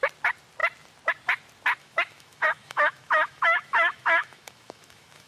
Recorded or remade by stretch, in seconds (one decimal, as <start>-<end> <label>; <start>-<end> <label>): 0.0-1.8 recorded; 1.8-5.3 remade